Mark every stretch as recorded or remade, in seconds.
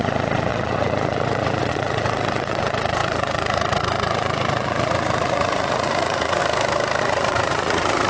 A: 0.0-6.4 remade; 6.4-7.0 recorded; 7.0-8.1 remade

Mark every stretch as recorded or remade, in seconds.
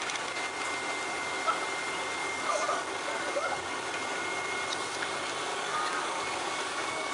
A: 0.0-2.2 recorded; 2.2-3.8 remade; 3.8-5.5 recorded; 5.5-7.1 remade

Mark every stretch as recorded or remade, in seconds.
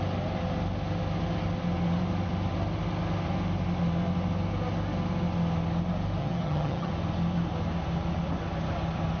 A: 0.0-6.2 recorded; 6.2-6.9 remade; 6.9-9.2 recorded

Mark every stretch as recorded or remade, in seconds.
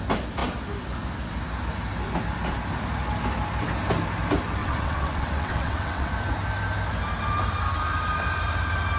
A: 0.0-4.6 recorded; 4.6-6.1 remade; 6.1-9.0 recorded